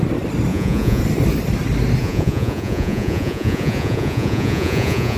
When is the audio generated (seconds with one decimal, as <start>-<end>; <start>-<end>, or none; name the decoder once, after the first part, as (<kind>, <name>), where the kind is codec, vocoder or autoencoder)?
0.5-1.0 (vocoder, Vocos); 2.0-5.2